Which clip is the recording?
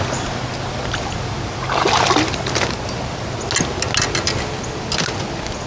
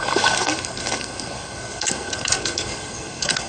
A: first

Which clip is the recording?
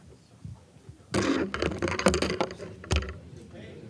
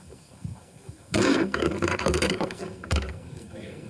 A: first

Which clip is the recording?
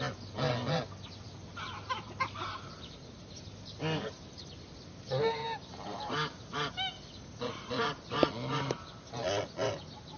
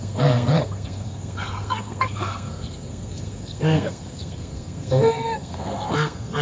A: first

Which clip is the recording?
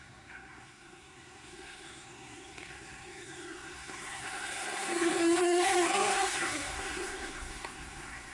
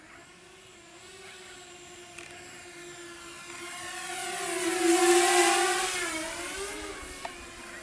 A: second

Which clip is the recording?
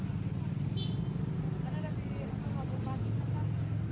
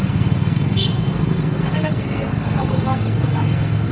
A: first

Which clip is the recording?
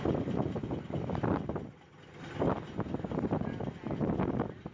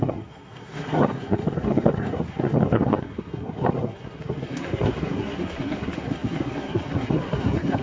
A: first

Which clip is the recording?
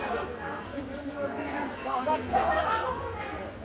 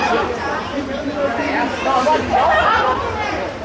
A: second